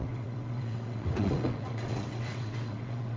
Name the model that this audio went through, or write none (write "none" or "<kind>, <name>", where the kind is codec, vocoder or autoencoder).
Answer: vocoder, WaveNeXt